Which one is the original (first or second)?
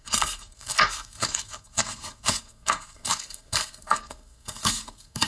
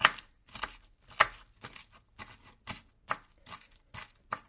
second